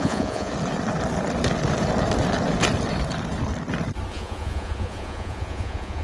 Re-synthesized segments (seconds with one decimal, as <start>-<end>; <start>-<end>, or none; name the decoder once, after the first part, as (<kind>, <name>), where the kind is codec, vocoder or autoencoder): 0.0-0.5 (vocoder, Vocos); 4.1-6.0